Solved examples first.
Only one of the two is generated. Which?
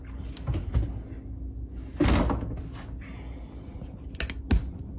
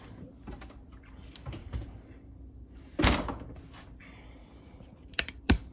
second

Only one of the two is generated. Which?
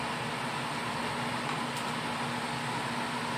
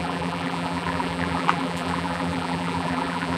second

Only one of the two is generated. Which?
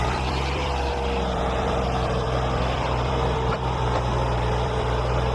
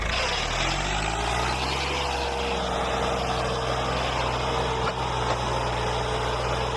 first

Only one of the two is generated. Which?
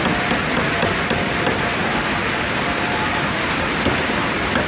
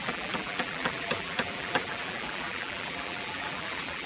second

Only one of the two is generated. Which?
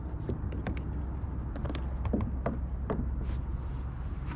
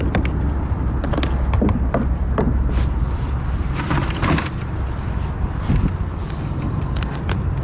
second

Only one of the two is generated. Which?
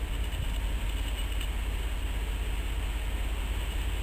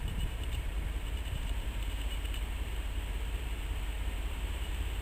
second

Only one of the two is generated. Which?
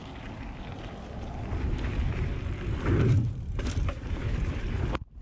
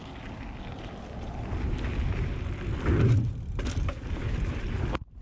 first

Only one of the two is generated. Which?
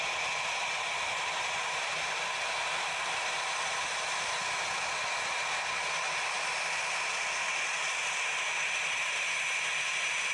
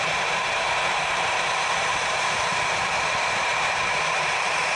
second